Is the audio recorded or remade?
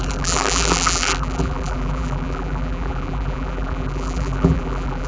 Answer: remade